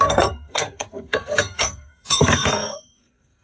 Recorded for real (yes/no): no